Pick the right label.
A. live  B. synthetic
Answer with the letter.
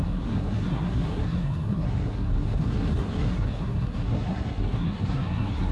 B